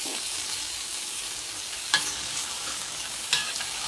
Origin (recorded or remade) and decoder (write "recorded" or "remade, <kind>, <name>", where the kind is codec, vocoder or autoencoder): remade, codec, DAC